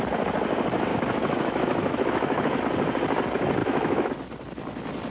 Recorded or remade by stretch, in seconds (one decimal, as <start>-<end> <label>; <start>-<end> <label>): 0.0-0.9 recorded; 0.9-2.6 remade; 2.6-3.6 recorded; 3.6-4.1 remade; 4.1-5.1 recorded